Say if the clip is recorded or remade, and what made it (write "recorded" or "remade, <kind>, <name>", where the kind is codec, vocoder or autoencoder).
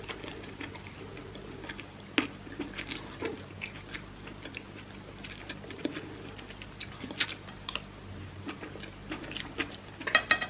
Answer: recorded